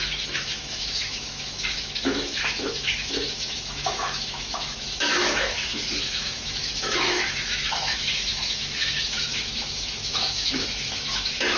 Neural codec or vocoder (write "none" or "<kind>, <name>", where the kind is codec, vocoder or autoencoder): autoencoder, DAC-VAE